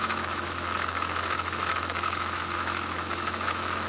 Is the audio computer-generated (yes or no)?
yes